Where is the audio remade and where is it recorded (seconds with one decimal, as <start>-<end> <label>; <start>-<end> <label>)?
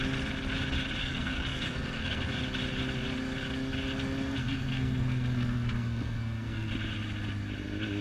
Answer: 0.0-1.0 recorded; 1.0-2.3 remade; 2.3-4.4 recorded; 4.4-6.7 remade; 6.7-8.0 recorded